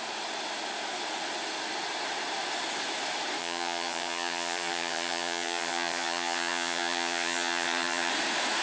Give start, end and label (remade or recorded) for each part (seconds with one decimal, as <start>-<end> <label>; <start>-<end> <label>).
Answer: 0.0-3.4 recorded; 3.4-8.1 remade; 8.1-8.6 recorded